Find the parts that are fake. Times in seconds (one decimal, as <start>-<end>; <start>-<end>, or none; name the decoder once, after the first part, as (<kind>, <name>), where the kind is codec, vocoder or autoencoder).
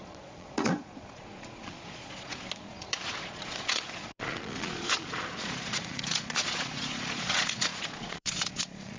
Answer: 0.0-9.0 (vocoder, Vocos)